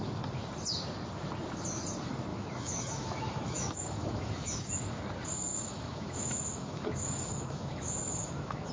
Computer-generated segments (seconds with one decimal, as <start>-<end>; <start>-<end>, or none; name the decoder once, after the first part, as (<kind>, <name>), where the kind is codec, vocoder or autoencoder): 2.3-4.7 (autoencoder, DAC-VAE); 5.5-8.7